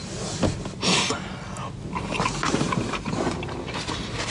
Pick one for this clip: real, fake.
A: real